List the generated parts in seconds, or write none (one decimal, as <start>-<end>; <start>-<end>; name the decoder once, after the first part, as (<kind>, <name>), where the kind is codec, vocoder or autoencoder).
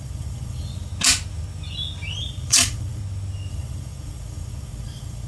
0.0-0.9 (vocoder, Vocos); 2.2-3.0; 3.5-5.3